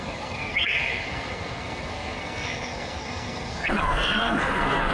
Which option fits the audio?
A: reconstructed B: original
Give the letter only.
A